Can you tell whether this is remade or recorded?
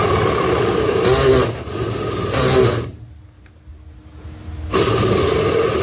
recorded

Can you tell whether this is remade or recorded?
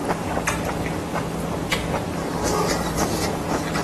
recorded